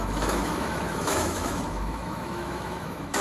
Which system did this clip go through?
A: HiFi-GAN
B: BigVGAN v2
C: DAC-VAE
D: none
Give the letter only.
C